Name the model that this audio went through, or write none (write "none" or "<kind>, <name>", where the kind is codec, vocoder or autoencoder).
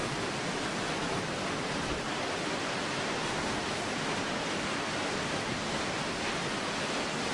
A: none